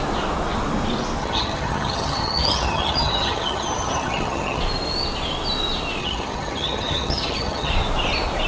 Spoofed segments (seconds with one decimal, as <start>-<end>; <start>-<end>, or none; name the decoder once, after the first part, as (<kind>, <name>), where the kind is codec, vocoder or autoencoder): 1.2-4.6 (vocoder, HiFi-GAN); 6.0-7.7

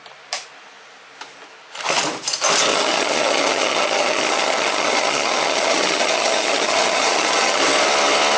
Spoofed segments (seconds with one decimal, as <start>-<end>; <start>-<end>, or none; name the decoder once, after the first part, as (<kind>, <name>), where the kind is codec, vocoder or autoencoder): 2.7-7.6 (vocoder, HiFi-GAN)

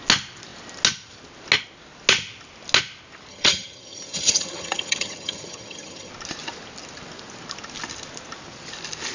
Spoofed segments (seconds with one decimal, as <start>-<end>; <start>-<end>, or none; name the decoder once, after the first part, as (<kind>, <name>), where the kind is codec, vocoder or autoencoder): 3.3-6.1 (vocoder, HiFi-GAN)

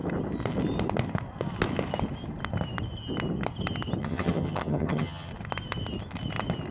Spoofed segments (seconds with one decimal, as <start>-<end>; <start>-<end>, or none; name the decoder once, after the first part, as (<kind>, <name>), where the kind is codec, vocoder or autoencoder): 4.0-5.3 (vocoder, HiFi-GAN)

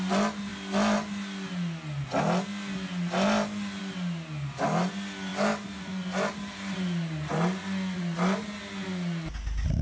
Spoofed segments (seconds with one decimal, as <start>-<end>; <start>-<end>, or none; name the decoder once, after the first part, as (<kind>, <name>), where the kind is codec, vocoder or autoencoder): none